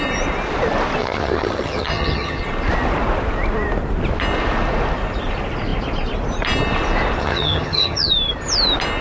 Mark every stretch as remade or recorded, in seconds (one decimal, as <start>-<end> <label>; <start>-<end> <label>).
0.0-1.0 recorded; 1.0-2.4 remade; 2.4-7.2 recorded; 7.2-8.1 remade; 8.1-9.0 recorded